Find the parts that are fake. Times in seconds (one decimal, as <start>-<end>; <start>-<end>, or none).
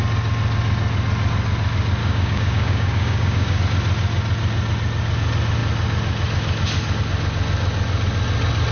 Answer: 2.0-3.6